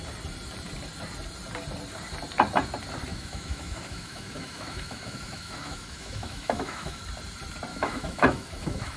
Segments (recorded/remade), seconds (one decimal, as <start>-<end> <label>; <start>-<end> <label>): 0.0-3.1 recorded; 3.1-7.0 remade; 7.0-7.7 recorded; 7.7-9.0 remade